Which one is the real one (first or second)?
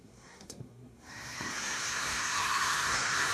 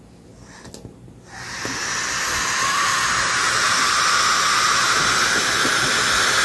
second